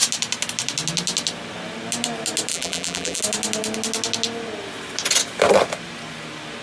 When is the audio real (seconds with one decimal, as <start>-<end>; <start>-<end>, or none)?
0.0-2.5; 3.2-6.6